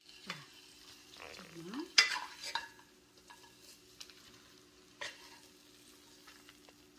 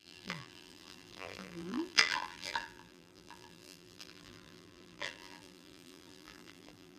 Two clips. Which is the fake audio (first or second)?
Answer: second